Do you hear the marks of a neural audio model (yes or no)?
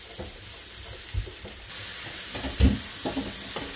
no